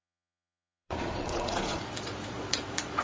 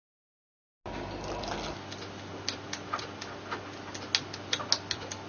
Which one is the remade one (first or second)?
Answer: first